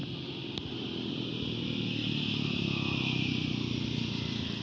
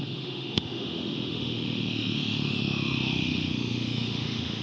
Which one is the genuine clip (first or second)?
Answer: first